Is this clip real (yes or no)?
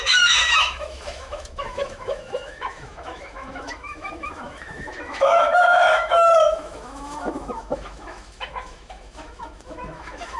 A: no